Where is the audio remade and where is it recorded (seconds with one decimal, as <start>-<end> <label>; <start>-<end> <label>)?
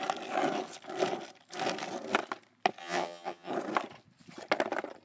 0.0-2.8 recorded; 2.8-3.5 remade; 3.5-5.0 recorded